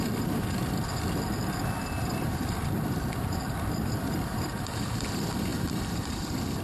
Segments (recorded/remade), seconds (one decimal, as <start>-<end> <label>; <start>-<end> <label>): 0.0-0.6 remade; 0.6-2.0 recorded; 2.0-5.5 remade; 5.5-6.6 recorded

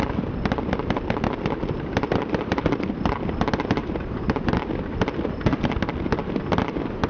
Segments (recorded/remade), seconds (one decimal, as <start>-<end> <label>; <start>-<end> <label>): 0.0-3.8 recorded; 3.8-4.6 remade; 4.6-7.1 recorded

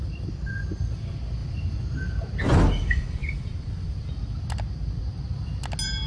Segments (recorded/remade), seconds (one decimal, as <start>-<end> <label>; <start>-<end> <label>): 0.0-6.1 recorded